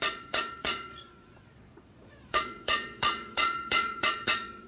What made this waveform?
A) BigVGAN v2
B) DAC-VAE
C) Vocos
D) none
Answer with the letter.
C